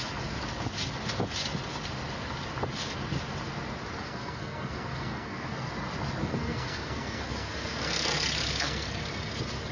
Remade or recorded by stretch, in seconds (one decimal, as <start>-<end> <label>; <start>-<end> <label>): 0.0-4.0 recorded; 4.0-5.7 remade; 5.7-6.2 recorded; 6.2-9.0 remade; 9.0-9.7 recorded